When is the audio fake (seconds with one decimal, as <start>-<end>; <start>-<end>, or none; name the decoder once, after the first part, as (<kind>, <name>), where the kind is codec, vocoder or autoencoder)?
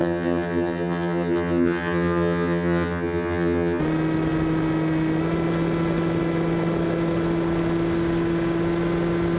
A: 0.0-3.8 (vocoder, HiFi-GAN)